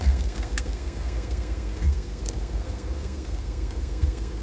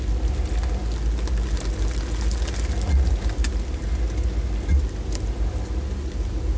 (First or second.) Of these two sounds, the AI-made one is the first